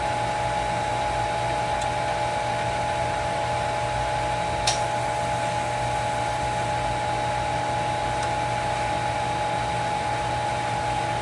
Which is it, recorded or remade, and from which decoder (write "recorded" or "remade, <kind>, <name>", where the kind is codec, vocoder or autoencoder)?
recorded